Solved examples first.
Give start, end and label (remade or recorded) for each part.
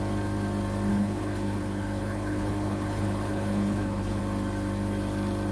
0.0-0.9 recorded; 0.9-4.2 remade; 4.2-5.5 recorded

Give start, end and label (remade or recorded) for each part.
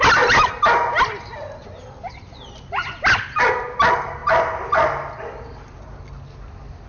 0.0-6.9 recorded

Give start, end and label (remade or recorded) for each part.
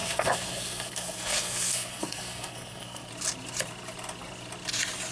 0.0-3.1 remade; 3.1-5.1 recorded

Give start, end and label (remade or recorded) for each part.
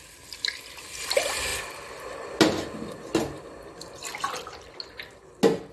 0.0-5.7 recorded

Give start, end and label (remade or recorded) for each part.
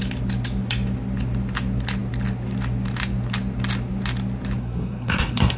0.0-4.6 recorded; 4.6-5.6 remade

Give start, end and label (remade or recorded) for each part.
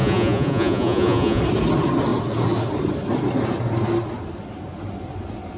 0.0-1.4 remade; 1.4-5.6 recorded